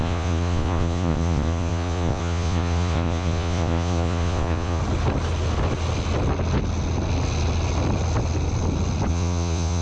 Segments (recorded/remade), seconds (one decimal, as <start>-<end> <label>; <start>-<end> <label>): 0.0-4.8 remade; 4.8-9.1 recorded; 9.1-9.8 remade